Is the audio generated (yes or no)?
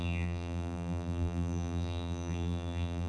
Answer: yes